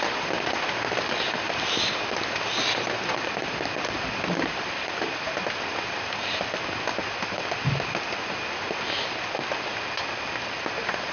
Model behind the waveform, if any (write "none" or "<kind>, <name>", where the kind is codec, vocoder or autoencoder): none